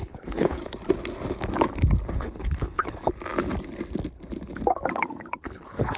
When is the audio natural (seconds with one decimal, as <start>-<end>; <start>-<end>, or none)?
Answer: 0.6-2.1; 3.1-5.4